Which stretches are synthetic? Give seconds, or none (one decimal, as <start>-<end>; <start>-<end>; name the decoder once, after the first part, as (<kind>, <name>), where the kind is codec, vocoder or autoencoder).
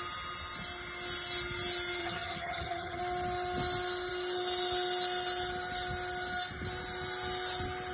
2.0-3.0 (vocoder, HiFi-GAN)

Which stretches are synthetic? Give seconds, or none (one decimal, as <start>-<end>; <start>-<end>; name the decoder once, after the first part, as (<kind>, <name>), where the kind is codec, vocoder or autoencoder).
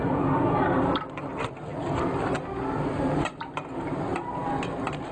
none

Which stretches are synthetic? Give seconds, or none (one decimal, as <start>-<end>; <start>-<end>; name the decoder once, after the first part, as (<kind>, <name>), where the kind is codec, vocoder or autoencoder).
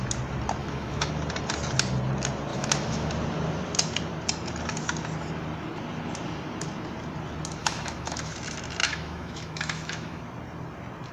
0.6-1.1 (autoencoder, DAC-VAE); 2.5-3.1; 7.6-8.3; 8.8-10.2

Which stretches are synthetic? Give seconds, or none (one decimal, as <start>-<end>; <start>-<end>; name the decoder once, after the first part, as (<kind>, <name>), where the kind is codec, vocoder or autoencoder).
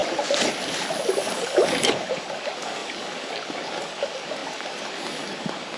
1.1-5.8 (codec, DAC)